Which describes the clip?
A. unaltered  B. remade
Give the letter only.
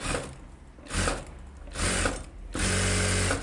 A